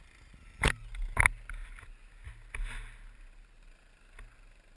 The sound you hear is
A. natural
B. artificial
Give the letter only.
A